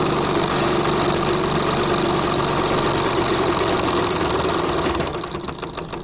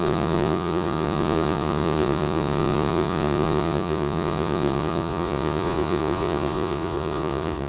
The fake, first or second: second